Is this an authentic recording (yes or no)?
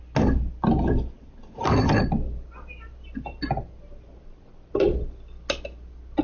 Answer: yes